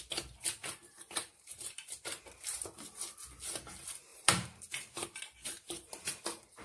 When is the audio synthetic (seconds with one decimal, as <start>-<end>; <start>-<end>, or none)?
0.6-2.2; 4.1-6.1